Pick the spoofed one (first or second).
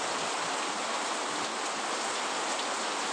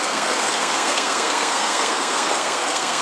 second